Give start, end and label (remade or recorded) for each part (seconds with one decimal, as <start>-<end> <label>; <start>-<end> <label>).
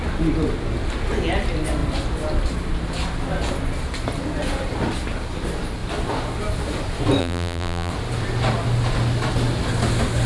0.0-7.2 recorded; 7.2-7.9 remade; 7.9-10.3 recorded